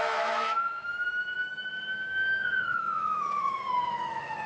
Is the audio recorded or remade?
remade